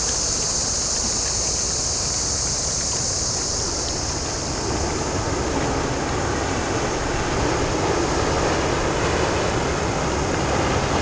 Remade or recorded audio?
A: recorded